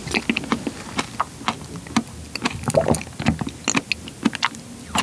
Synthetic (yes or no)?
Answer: no